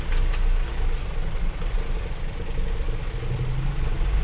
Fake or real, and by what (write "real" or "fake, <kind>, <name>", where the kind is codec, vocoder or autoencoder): real